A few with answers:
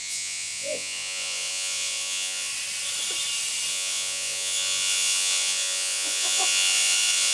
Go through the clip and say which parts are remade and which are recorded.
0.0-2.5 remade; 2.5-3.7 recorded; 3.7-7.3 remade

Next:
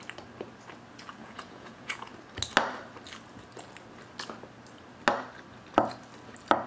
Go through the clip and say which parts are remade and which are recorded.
0.0-1.2 recorded; 1.2-2.1 remade; 2.1-6.7 recorded

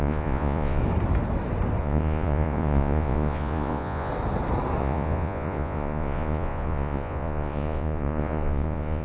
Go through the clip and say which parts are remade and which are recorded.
0.0-0.8 remade; 0.8-1.8 recorded; 1.8-4.1 remade; 4.1-4.8 recorded; 4.8-9.0 remade

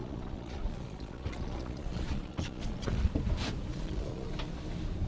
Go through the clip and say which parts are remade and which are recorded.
0.0-3.1 remade; 3.1-3.7 recorded; 3.7-4.3 remade; 4.3-5.1 recorded

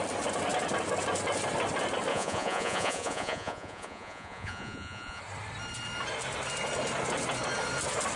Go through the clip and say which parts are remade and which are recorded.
0.0-2.1 recorded; 2.1-5.2 remade; 5.2-8.2 recorded

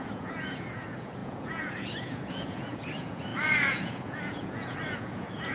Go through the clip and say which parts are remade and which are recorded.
0.0-5.5 remade